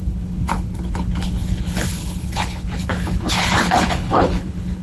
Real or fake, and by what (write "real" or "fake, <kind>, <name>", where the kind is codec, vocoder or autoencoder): fake, codec, HILCodec